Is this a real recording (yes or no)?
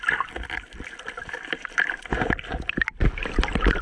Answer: yes